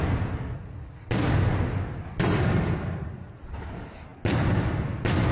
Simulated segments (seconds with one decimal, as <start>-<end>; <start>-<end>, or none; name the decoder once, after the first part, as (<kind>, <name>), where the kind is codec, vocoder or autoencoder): none